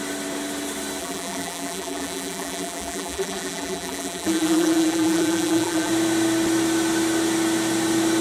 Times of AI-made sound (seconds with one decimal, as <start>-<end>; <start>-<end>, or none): 1.0-5.9